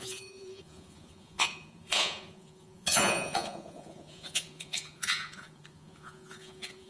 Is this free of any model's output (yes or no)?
no